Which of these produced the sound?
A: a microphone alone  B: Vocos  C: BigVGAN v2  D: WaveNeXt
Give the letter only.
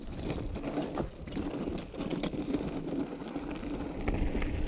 C